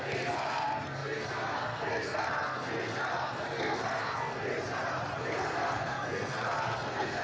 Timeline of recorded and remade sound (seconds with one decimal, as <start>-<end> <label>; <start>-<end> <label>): 0.0-4.5 remade; 4.5-5.2 recorded; 5.2-7.2 remade